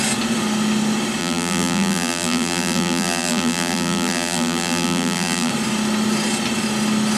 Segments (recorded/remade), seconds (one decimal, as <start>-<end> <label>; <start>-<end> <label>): 0.0-1.2 recorded; 1.2-5.5 remade; 5.5-7.2 recorded